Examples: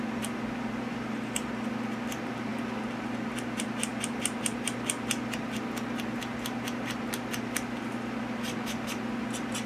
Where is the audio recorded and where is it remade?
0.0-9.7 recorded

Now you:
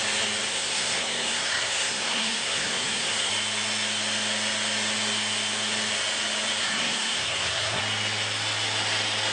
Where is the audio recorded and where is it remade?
0.0-0.5 recorded; 0.5-3.3 remade; 3.3-6.6 recorded; 6.6-7.8 remade; 7.8-9.3 recorded

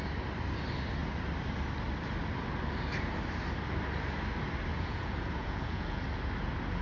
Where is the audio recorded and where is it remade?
0.0-4.7 recorded; 4.7-6.0 remade; 6.0-6.8 recorded

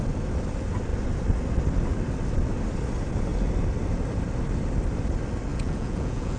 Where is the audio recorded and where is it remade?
0.0-5.5 recorded; 5.5-6.4 remade

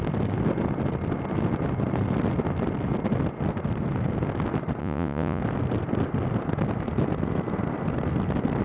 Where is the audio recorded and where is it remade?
0.0-4.8 recorded; 4.8-5.4 remade; 5.4-8.6 recorded